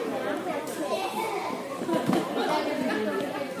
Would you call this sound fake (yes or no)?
yes